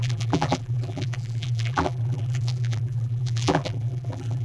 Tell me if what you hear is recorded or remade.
remade